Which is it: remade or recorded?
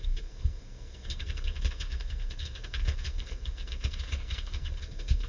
remade